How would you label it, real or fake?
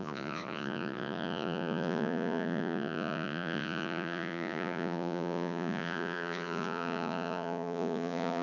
fake